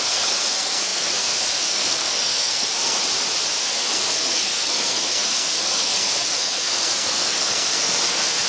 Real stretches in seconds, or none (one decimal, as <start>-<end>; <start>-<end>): 3.0-3.6